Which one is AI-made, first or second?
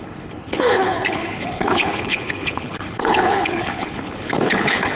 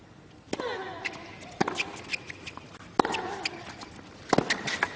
first